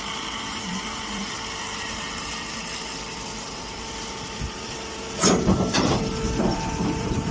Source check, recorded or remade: remade